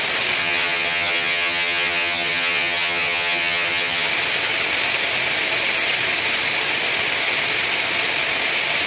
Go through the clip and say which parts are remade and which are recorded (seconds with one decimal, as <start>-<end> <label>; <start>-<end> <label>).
0.0-0.4 recorded; 0.4-4.1 remade; 4.1-8.9 recorded